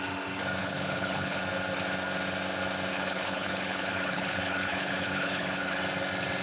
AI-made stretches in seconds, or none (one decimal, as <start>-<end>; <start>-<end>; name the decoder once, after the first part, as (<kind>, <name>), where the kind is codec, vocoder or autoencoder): 0.6-1.4 (codec, HILCodec); 2.9-5.8